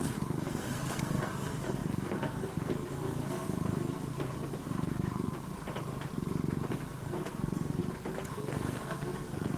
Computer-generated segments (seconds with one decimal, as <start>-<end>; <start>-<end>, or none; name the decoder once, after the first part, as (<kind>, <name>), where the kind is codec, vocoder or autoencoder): 0.0-5.5 (codec, SNAC); 6.7-7.8; 8.3-9.6